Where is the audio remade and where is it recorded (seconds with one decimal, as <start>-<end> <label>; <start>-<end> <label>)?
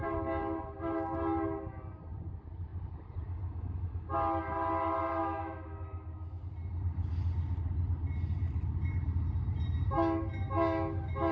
0.0-5.2 recorded; 5.2-6.4 remade; 6.4-11.3 recorded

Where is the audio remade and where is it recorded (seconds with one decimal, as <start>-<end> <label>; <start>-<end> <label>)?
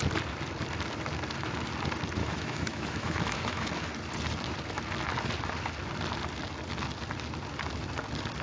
0.0-2.2 recorded; 2.2-3.7 remade; 3.7-8.4 recorded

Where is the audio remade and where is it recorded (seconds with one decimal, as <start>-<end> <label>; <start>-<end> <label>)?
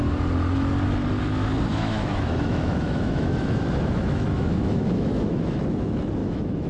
0.0-1.7 recorded; 1.7-5.6 remade; 5.6-6.2 recorded; 6.2-6.7 remade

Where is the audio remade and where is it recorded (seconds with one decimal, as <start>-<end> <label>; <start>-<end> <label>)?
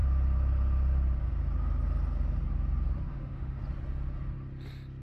0.0-3.1 recorded; 3.1-3.6 remade; 3.6-5.0 recorded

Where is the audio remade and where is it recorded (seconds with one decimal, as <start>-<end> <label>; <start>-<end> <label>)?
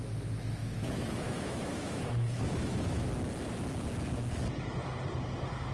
0.0-0.6 recorded; 0.6-3.1 remade; 3.1-5.7 recorded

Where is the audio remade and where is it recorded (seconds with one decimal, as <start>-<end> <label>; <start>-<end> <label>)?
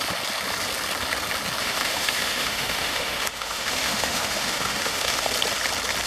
0.0-1.6 recorded; 1.6-5.3 remade; 5.3-6.1 recorded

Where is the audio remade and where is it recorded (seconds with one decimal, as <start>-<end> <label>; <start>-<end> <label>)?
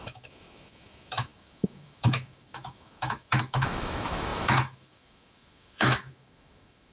0.0-6.9 remade